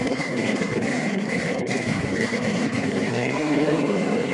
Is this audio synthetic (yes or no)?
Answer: yes